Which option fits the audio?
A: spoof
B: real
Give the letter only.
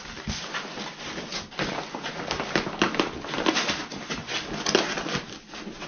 B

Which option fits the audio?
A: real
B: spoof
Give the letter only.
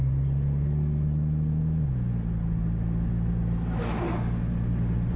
A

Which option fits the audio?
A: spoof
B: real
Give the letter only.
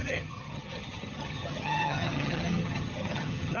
A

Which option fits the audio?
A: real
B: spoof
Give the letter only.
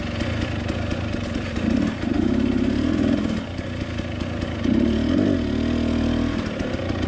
A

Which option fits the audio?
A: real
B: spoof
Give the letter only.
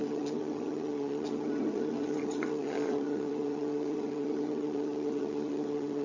B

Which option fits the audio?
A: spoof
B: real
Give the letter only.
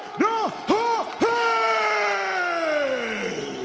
B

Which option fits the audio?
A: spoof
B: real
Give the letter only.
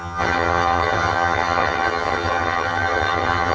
A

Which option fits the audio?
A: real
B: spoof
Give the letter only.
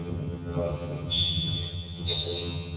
B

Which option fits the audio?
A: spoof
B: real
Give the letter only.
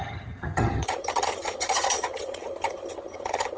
A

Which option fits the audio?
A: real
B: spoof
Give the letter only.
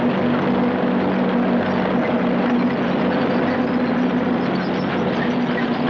A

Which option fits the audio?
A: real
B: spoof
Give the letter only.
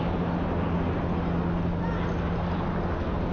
A